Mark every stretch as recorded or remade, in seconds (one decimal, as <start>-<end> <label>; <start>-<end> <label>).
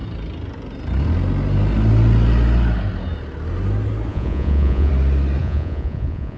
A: 0.0-4.1 recorded; 4.1-4.9 remade; 4.9-5.4 recorded; 5.4-6.4 remade